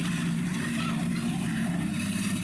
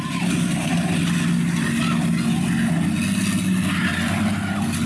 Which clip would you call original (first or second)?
second